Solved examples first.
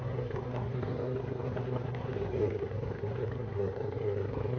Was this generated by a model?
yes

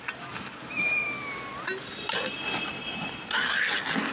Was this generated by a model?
no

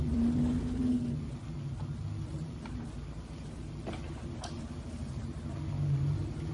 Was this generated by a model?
no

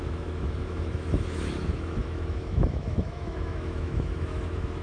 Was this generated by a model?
yes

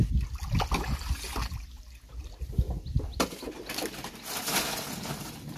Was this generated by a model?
no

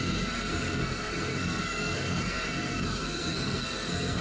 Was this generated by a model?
yes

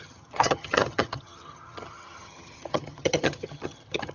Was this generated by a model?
yes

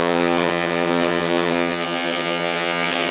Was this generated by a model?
yes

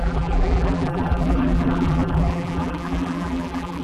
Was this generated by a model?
yes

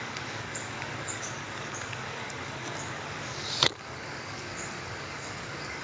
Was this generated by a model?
yes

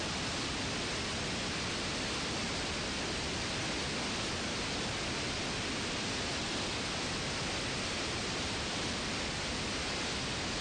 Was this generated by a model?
no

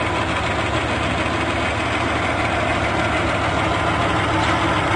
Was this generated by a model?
no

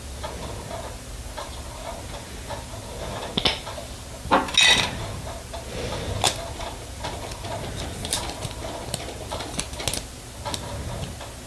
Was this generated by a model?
no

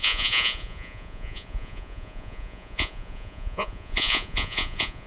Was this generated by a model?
yes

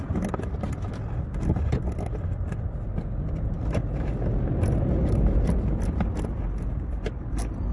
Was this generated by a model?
no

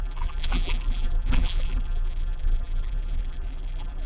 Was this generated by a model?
yes